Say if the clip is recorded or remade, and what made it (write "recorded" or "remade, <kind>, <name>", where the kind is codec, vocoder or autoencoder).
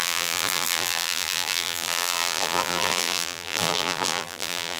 remade, vocoder, BigVGAN v2